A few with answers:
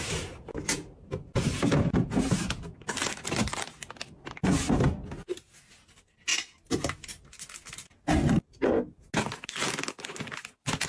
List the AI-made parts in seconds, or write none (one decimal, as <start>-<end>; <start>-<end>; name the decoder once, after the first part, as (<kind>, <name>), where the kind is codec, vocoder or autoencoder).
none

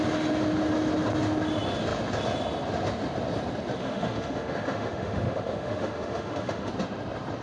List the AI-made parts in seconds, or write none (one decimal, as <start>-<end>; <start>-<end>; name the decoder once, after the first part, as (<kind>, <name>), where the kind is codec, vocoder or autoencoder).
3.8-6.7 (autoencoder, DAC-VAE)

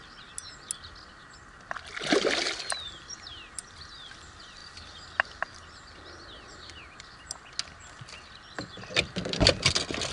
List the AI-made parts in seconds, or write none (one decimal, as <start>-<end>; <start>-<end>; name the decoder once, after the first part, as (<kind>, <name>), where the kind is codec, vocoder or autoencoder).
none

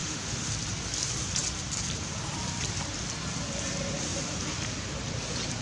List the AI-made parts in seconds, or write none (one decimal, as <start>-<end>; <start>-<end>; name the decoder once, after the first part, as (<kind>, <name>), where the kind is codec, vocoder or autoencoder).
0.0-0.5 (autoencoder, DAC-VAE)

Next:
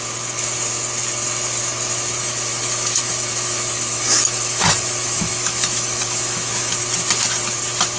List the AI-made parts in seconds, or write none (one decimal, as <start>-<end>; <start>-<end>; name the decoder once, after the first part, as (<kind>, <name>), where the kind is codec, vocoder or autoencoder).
2.2-6.8 (autoencoder, DAC-VAE)